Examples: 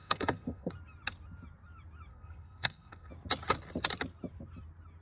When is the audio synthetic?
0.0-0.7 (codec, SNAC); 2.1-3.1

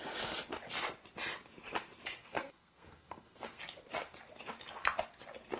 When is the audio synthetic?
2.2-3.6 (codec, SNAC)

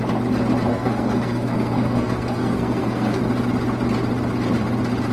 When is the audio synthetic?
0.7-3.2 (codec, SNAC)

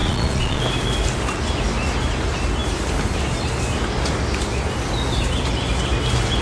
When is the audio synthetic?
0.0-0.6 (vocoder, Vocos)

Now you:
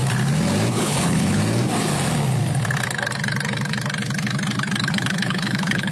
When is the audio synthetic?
0.7-1.4 (codec, HILCodec); 4.9-5.9

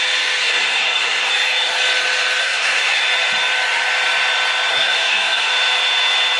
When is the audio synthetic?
0.4-1.3 (codec, SNAC); 2.4-3.0; 4.7-5.5